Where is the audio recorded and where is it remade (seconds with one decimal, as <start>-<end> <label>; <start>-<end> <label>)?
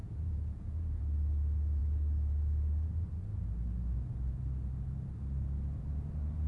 0.0-1.0 remade; 1.0-6.5 recorded